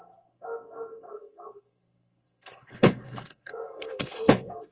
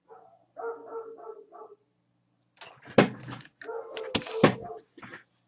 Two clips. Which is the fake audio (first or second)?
first